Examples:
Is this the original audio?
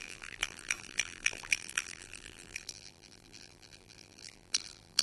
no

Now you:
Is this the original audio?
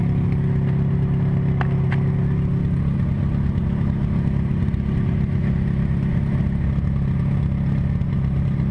yes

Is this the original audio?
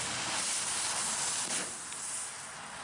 yes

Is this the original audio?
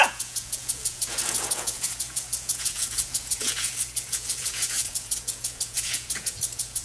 no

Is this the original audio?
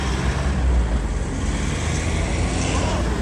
yes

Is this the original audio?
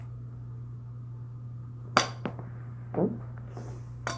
yes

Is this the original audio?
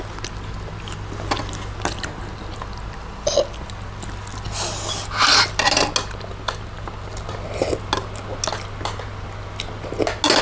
yes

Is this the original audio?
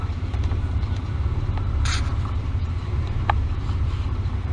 no